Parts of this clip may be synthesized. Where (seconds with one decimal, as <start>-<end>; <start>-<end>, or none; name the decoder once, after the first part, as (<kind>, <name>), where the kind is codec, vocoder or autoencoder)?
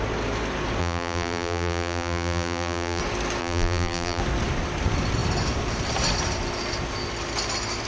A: 0.8-3.0 (vocoder, BigVGAN v2); 3.4-4.2